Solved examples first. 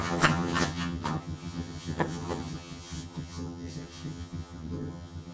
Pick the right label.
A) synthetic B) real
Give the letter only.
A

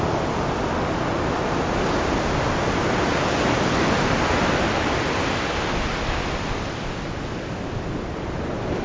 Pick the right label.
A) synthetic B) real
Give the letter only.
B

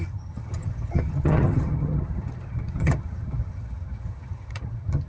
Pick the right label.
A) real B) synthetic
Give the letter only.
B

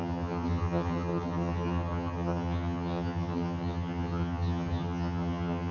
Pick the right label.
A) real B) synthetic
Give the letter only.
B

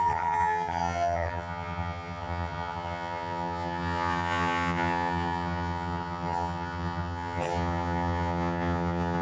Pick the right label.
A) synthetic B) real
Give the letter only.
A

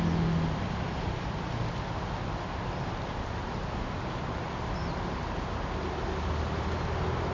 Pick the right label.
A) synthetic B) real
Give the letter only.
B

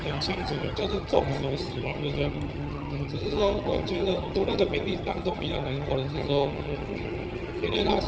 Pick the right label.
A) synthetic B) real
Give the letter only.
A